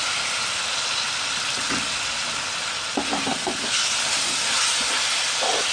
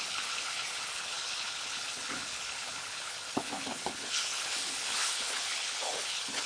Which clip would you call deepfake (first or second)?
second